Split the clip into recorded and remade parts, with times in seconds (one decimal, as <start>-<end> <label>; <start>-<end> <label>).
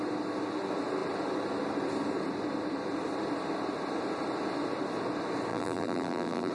0.0-5.5 recorded; 5.5-6.5 remade